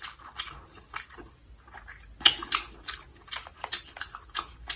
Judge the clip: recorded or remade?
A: recorded